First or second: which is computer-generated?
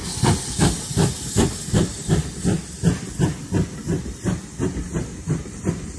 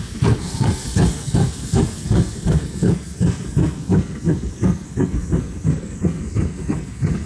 second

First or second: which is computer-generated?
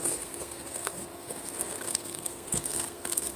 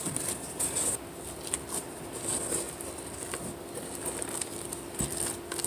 first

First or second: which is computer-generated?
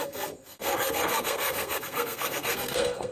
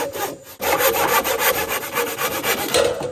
first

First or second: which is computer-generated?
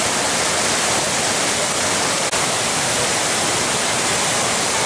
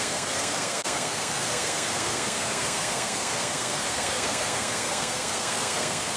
second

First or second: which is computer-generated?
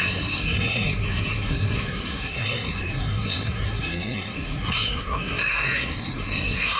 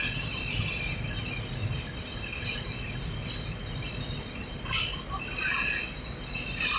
first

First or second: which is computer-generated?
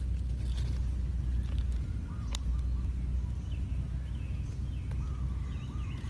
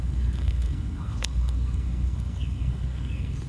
second